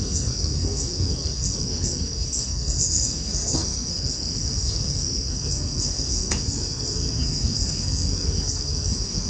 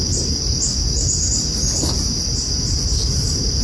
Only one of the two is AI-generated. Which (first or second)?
first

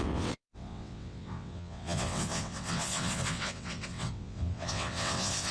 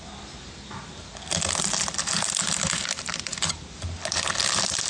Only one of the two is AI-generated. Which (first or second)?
first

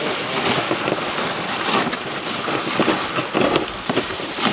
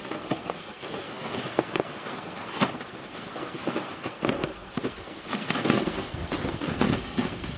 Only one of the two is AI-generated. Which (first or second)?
second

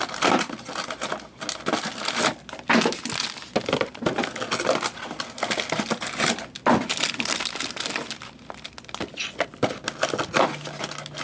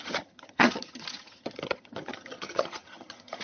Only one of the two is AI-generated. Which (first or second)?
second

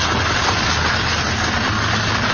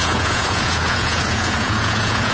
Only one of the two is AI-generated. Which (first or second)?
second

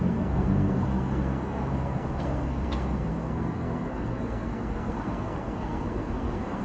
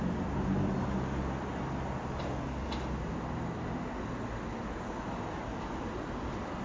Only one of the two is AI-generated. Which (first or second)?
first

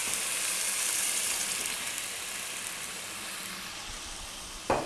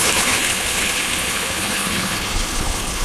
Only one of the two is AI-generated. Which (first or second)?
second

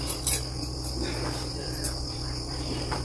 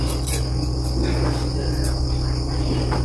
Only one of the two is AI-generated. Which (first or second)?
first